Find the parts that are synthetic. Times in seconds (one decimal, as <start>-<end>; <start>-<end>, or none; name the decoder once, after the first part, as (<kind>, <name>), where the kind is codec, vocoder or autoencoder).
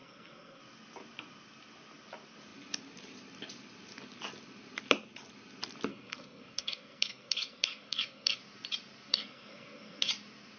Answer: 0.0-0.6 (codec, SNAC); 5.9-8.4; 9.1-10.1